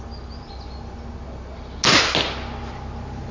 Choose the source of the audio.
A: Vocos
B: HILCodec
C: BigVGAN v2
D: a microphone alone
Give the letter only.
D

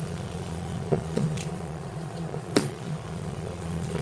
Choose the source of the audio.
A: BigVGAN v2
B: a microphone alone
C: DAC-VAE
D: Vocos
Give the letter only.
D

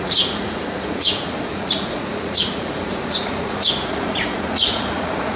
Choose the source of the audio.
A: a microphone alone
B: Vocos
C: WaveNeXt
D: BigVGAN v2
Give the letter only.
B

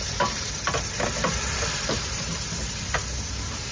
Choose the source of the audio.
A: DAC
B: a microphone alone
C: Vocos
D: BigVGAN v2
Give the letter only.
B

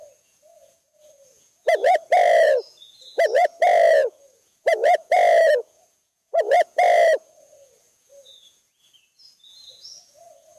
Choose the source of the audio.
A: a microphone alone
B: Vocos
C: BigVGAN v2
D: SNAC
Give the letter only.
B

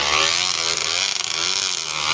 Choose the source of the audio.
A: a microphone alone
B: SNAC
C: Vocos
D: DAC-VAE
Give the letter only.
A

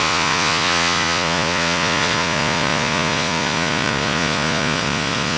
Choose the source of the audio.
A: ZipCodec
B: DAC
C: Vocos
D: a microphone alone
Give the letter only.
C